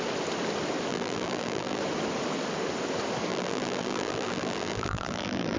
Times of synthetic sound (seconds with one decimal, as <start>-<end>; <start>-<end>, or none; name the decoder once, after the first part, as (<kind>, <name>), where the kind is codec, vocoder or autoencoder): 0.9-1.8 (vocoder, BigVGAN v2); 3.3-5.6